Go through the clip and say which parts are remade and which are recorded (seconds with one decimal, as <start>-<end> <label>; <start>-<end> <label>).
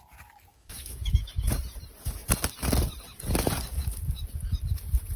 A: 0.0-0.5 recorded; 0.5-1.4 remade; 1.4-5.2 recorded